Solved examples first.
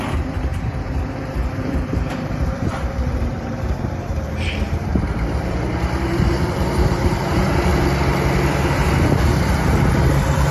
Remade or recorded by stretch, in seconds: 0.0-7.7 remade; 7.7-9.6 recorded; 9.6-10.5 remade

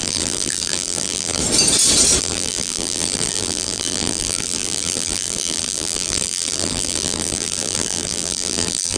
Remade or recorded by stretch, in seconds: 0.0-1.4 remade; 1.4-2.2 recorded; 2.2-9.0 remade

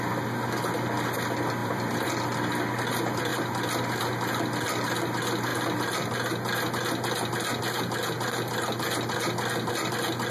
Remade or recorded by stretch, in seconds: 0.0-1.6 recorded; 1.6-2.1 remade; 2.1-10.3 recorded